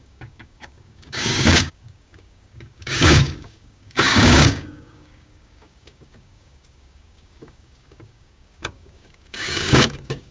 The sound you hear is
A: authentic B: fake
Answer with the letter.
B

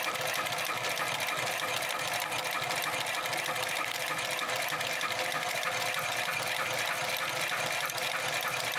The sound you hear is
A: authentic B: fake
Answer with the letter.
A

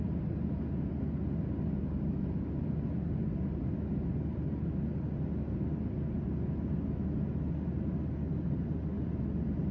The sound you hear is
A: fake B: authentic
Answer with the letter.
B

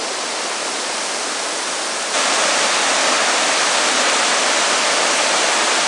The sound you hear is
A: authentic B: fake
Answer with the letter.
A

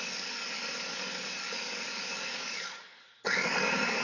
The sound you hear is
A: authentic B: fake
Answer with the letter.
B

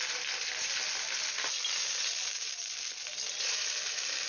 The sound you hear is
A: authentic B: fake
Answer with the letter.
A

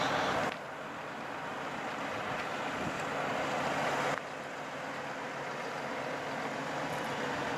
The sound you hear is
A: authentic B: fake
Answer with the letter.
A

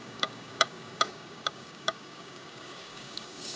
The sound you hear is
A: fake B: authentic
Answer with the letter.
A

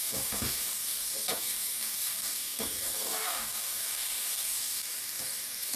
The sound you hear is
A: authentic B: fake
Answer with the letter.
B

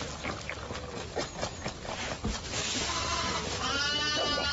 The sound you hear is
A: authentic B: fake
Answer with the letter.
A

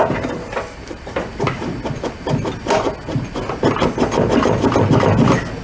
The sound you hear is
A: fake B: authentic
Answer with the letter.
B